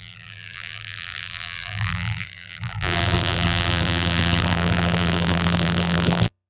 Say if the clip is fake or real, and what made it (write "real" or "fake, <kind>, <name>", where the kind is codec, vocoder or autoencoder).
fake, vocoder, BigVGAN v2